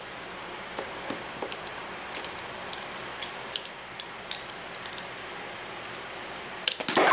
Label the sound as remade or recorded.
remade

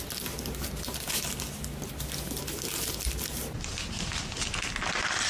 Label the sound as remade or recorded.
recorded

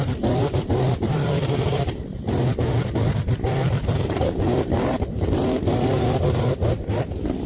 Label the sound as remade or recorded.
remade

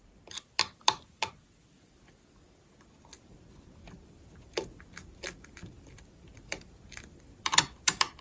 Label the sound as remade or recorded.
remade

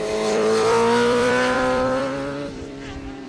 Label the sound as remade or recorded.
remade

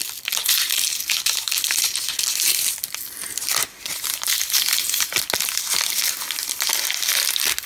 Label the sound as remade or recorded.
recorded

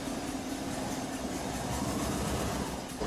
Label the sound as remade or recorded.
recorded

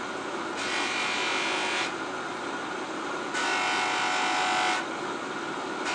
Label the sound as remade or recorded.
recorded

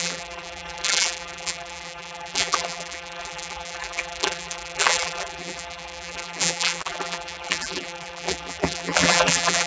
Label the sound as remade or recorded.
remade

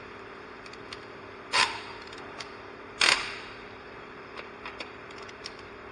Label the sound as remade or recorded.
remade